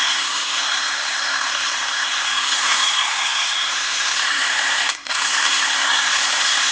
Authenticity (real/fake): fake